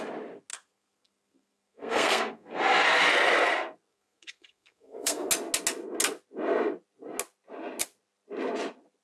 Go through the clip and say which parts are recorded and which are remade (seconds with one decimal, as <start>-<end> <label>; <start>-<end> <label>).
0.0-0.5 recorded; 0.5-2.6 remade; 2.6-3.9 recorded; 3.9-5.3 remade; 5.3-9.0 recorded

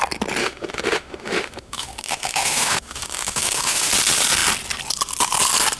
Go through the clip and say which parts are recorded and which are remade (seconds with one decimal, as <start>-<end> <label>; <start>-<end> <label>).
0.0-0.4 recorded; 0.4-3.9 remade; 3.9-5.8 recorded

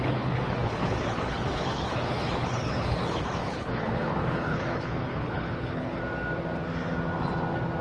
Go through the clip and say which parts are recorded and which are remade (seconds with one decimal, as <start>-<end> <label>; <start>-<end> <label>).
0.0-6.0 remade; 6.0-7.8 recorded

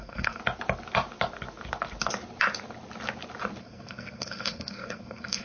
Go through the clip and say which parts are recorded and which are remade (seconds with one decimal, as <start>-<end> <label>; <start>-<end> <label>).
0.0-0.4 remade; 0.4-3.6 recorded; 3.6-5.4 remade

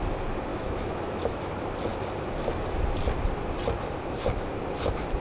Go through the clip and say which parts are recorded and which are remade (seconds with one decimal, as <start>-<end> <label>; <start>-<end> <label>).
0.0-0.5 recorded; 0.5-1.5 remade; 1.5-5.2 recorded